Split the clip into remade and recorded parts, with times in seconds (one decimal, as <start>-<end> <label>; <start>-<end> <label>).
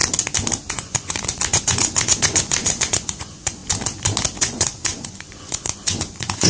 0.0-0.7 recorded; 0.7-3.6 remade; 3.6-4.4 recorded; 4.4-6.5 remade